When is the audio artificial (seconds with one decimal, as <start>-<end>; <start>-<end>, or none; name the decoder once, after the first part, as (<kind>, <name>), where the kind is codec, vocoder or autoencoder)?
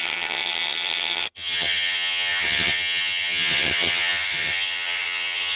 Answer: 0.0-5.6 (vocoder, HiFi-GAN)